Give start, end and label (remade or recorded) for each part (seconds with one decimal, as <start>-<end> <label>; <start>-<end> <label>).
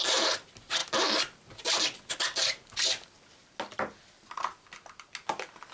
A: 0.0-5.7 recorded